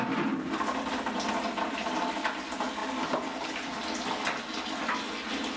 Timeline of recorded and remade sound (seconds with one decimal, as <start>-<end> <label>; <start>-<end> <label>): 0.0-5.6 recorded

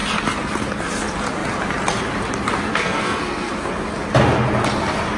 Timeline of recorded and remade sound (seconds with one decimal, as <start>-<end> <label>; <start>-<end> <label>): 0.0-2.7 recorded; 2.7-3.5 remade; 3.5-5.2 recorded